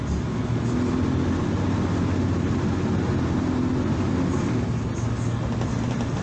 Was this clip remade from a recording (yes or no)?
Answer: no